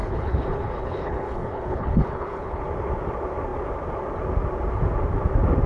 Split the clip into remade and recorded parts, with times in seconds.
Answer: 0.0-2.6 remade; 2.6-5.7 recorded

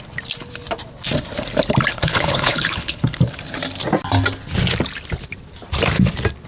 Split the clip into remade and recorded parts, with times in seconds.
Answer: 0.0-1.9 recorded; 1.9-3.2 remade; 3.2-6.5 recorded

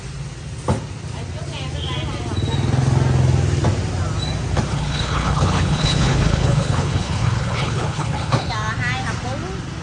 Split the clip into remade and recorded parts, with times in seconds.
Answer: 0.0-4.7 recorded; 4.7-8.5 remade; 8.5-9.8 recorded

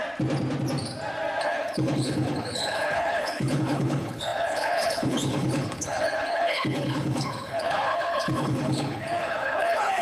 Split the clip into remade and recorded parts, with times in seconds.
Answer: 0.0-1.4 recorded; 1.4-10.0 remade

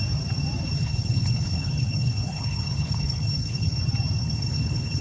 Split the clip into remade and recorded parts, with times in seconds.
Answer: 0.0-0.8 recorded; 0.8-3.8 remade; 3.8-4.2 recorded; 4.2-5.0 remade

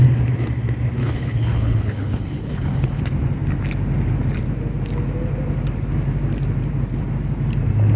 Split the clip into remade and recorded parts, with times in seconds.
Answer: 0.0-1.0 recorded; 1.0-3.0 remade; 3.0-8.0 recorded

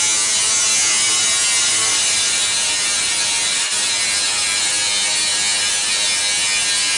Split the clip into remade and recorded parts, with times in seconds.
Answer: 0.0-7.0 recorded

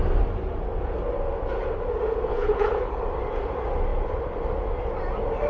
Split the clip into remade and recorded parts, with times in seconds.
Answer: 0.0-2.3 recorded; 2.3-3.0 remade; 3.0-5.5 recorded